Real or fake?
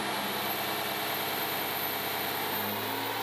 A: real